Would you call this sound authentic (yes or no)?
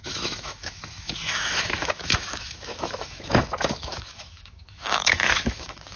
no